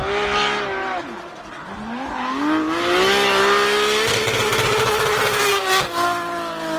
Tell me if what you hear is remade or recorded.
recorded